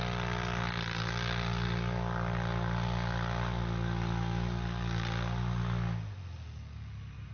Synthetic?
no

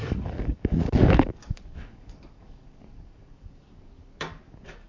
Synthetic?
yes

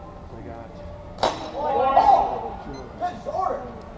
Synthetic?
no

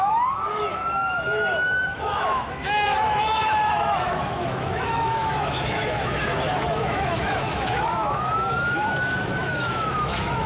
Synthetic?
yes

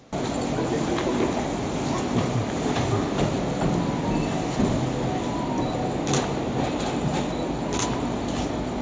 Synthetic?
no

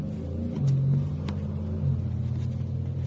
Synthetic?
no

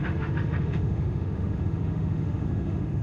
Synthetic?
yes